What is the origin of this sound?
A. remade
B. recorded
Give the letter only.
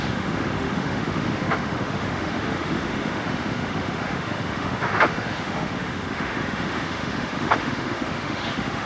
A